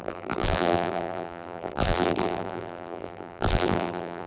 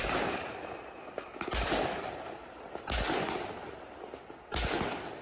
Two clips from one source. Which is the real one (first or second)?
second